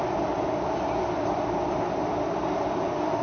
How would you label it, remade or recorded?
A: remade